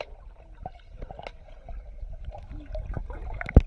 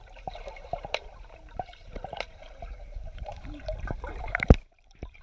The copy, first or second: second